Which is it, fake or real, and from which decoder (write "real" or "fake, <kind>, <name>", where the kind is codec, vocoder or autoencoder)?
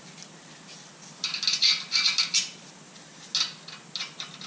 real